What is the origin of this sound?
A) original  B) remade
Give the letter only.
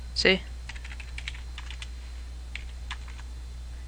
A